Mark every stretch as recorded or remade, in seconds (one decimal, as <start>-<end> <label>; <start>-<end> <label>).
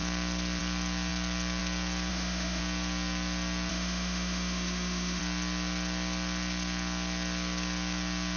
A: 0.0-2.1 recorded; 2.1-2.6 remade; 2.6-3.7 recorded; 3.7-5.2 remade; 5.2-8.4 recorded